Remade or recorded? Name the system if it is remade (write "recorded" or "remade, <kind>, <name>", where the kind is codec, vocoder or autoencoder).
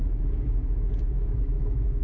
remade, autoencoder, DAC-VAE